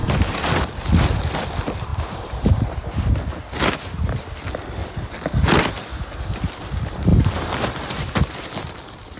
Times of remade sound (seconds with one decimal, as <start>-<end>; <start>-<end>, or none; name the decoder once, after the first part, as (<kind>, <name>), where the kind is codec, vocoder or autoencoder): 0.0-0.5 (vocoder, BigVGAN v2); 1.9-2.6; 7.1-8.3